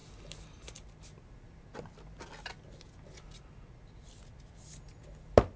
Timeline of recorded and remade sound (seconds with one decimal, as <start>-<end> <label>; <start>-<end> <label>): 0.0-5.6 recorded